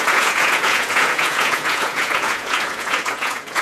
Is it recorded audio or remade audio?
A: remade